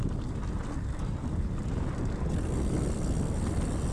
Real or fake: real